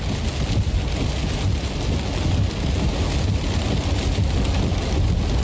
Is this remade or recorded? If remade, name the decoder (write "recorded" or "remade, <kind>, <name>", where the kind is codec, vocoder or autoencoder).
recorded